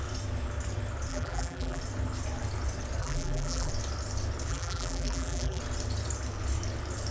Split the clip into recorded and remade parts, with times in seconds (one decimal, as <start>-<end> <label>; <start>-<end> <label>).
0.0-1.1 recorded; 1.1-1.8 remade; 1.8-3.0 recorded; 3.0-3.7 remade; 3.7-4.5 recorded; 4.5-5.6 remade; 5.6-7.1 recorded